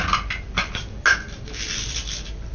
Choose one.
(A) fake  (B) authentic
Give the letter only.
B